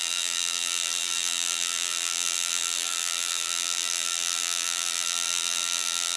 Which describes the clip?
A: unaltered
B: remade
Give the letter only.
B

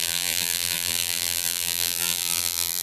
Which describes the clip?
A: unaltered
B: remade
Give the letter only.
B